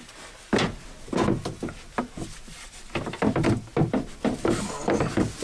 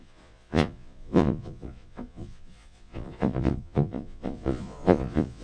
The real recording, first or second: first